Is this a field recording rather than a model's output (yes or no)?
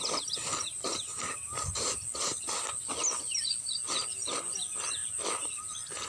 yes